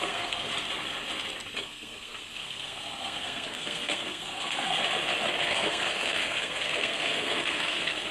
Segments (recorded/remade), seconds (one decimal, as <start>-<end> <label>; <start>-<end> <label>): 0.0-0.5 remade; 0.5-1.6 recorded; 1.6-4.8 remade; 4.8-5.4 recorded; 5.4-8.1 remade